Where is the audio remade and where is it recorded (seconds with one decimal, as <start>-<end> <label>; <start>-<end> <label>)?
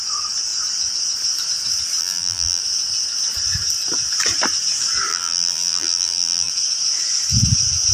0.0-2.0 recorded; 2.0-2.6 remade; 2.6-5.1 recorded; 5.1-6.5 remade; 6.5-7.9 recorded